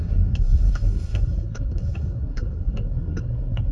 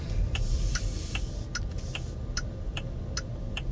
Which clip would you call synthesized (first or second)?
first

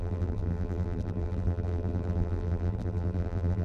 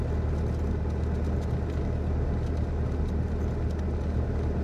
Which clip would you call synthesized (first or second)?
first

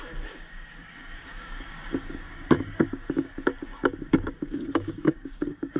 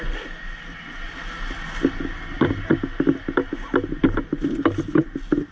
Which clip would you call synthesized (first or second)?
first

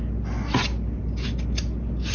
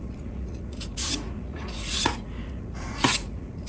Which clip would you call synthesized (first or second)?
second